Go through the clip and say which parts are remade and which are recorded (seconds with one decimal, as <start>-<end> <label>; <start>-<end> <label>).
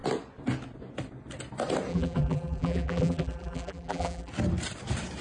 0.0-1.9 recorded; 1.9-4.3 remade; 4.3-5.2 recorded